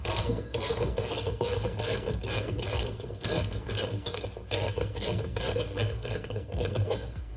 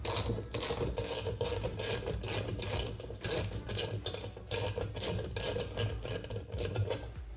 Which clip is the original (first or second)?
second